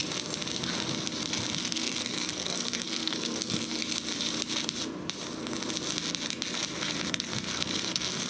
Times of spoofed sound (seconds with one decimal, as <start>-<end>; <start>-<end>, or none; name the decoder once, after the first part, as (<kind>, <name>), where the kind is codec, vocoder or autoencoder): 1.6-3.8 (codec, SNAC); 7.1-8.3